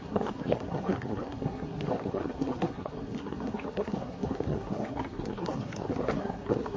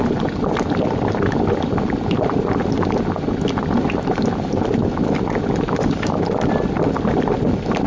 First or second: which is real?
second